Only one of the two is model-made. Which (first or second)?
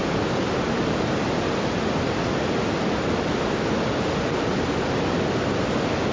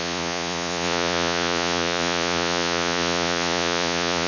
second